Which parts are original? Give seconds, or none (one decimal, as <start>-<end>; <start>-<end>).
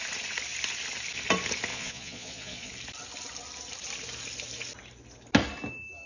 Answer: 0.0-1.7; 2.7-6.1